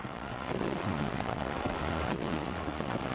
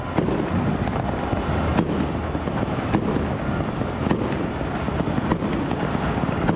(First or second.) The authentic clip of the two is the second